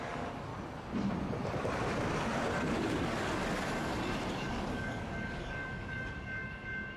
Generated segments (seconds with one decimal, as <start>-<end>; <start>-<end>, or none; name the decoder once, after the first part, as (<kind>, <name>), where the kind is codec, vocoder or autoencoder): 0.0-0.5 (codec, DAC); 2.7-3.4; 4.3-7.0